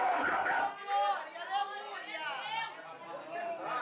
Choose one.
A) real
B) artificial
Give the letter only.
A